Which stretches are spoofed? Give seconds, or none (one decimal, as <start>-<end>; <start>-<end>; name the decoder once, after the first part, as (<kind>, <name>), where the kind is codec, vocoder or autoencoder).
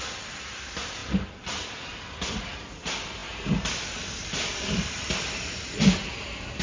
none